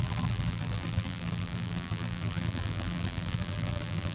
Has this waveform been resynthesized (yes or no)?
yes